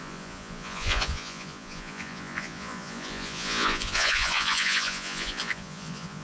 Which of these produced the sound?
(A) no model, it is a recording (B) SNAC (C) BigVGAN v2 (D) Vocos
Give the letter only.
D